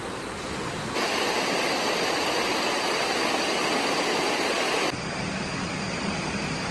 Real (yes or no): yes